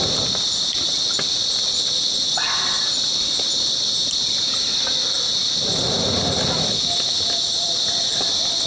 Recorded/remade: recorded